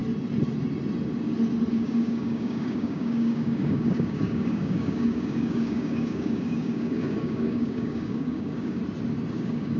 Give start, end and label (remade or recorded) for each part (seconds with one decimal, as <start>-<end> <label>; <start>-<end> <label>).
0.0-1.7 recorded; 1.7-8.8 remade; 8.8-9.3 recorded; 9.3-9.8 remade